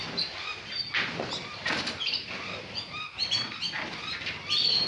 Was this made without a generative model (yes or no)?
yes